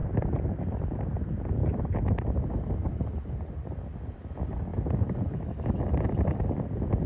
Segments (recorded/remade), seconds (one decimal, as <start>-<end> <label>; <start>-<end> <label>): 0.0-0.6 remade; 0.6-1.6 recorded; 1.6-3.1 remade; 3.1-7.1 recorded